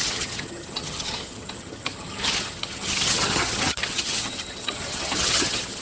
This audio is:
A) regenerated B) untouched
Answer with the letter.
A